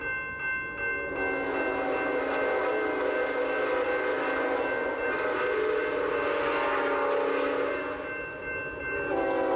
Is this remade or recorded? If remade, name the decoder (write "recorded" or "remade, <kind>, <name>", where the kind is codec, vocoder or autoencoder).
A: recorded